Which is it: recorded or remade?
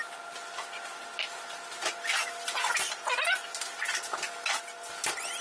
recorded